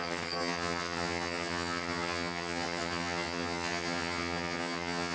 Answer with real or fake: fake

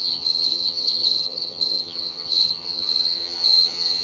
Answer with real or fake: fake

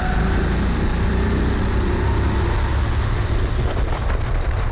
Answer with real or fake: real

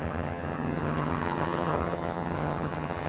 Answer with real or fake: fake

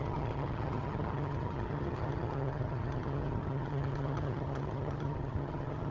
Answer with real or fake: fake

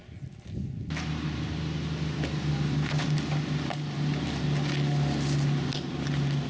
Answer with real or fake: real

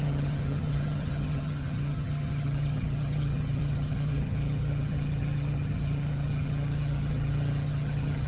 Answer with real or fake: fake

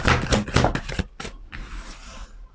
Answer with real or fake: real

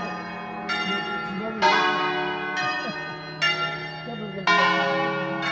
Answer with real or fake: real